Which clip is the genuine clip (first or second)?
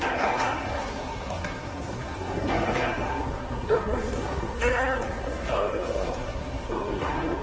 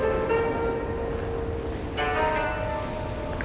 second